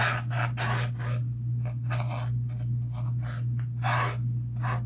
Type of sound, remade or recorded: recorded